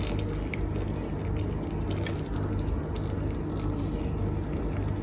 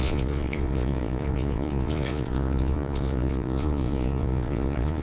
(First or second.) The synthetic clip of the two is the second